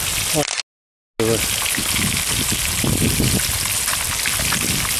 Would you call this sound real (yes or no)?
yes